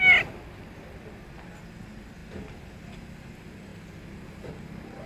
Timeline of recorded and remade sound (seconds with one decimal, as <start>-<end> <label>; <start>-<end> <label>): 0.0-5.1 recorded